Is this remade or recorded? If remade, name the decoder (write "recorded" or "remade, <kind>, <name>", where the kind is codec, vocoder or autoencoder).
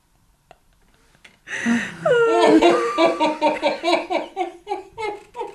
recorded